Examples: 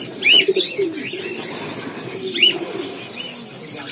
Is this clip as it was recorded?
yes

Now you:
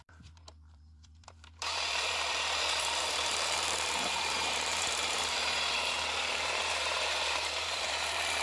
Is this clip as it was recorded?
no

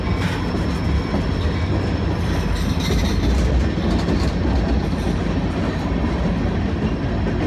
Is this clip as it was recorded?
yes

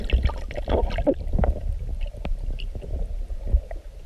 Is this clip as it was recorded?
yes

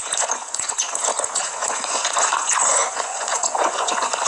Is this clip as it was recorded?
no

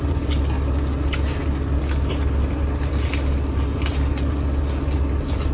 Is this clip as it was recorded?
yes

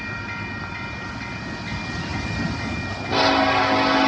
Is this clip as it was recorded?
yes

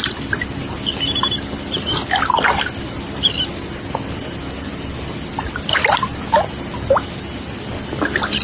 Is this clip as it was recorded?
yes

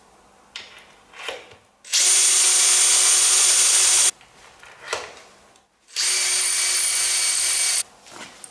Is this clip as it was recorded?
yes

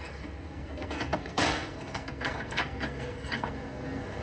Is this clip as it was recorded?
no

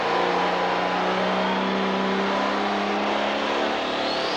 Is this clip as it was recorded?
yes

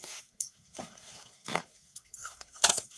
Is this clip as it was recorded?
no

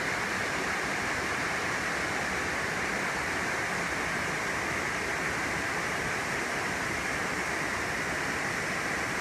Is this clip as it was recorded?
yes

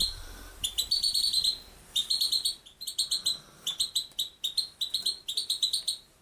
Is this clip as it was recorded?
yes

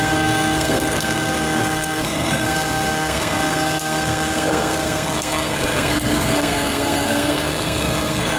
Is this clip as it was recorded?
no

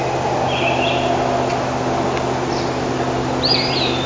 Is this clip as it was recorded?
yes